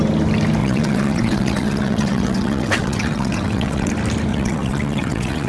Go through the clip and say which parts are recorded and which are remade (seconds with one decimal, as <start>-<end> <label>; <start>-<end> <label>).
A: 0.0-0.6 recorded; 0.6-3.9 remade; 3.9-4.3 recorded; 4.3-5.5 remade